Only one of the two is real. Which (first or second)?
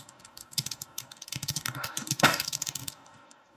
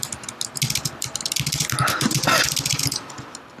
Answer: second